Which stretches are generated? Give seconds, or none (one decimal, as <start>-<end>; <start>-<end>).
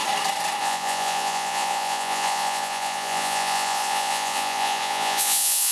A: 0.6-5.7